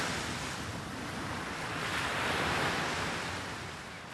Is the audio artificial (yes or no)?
no